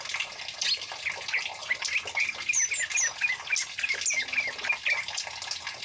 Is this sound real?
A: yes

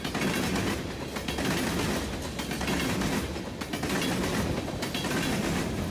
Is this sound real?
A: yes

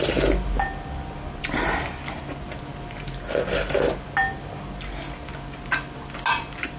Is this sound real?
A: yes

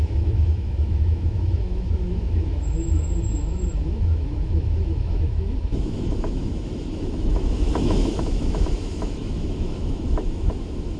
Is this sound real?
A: no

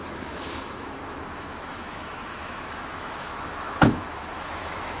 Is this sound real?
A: no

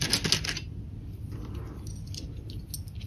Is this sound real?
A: yes